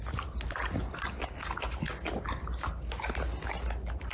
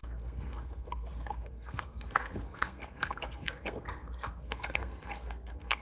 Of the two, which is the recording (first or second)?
first